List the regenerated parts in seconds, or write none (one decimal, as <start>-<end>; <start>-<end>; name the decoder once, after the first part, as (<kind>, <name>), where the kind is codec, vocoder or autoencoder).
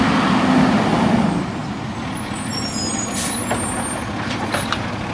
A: none